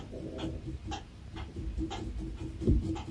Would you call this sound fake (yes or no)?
no